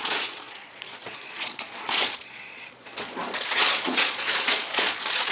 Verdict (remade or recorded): remade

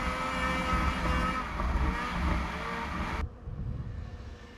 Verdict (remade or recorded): recorded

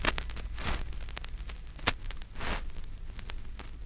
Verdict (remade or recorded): recorded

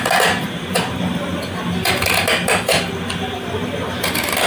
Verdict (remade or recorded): recorded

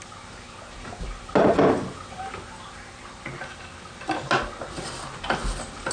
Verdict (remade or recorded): recorded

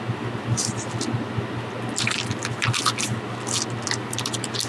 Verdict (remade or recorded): recorded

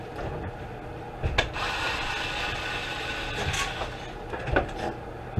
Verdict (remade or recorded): recorded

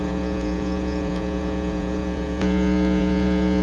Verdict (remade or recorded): remade